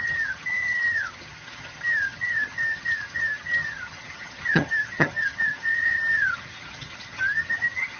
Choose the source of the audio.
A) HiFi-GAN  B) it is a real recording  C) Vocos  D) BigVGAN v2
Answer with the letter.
A